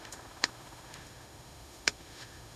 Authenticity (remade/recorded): remade